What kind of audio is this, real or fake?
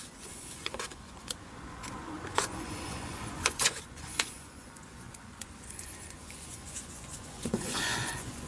fake